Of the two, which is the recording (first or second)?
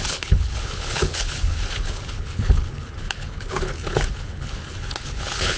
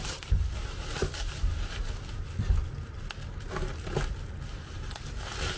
second